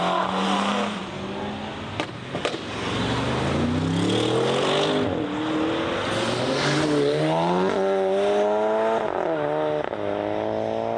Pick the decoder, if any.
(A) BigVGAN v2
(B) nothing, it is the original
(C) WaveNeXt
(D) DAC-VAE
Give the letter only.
B